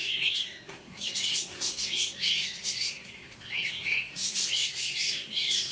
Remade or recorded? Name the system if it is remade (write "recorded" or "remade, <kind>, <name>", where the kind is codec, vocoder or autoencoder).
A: remade, codec, SNAC